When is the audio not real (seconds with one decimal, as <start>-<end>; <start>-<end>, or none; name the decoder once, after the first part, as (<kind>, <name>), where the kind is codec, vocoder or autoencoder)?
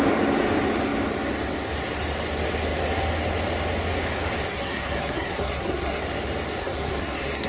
4.5-6.0 (codec, SNAC); 6.6-7.5